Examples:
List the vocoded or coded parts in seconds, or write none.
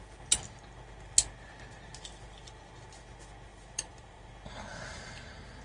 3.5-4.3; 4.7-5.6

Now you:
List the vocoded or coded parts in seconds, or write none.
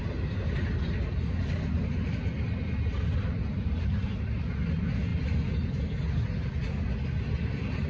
none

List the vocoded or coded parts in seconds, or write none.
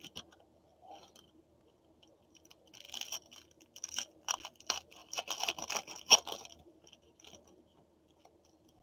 none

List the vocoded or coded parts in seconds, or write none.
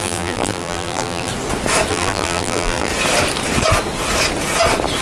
0.0-1.3; 1.9-2.9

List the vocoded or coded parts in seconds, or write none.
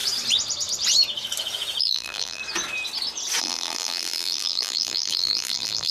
1.8-2.4; 3.4-5.9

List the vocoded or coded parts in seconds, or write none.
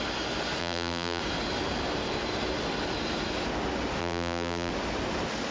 0.6-1.2; 4.0-4.7